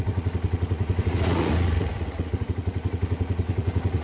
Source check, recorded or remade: remade